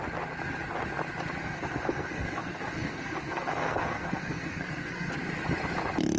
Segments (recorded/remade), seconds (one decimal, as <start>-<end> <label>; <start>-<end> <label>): 0.0-1.4 recorded; 1.4-5.1 remade; 5.1-6.2 recorded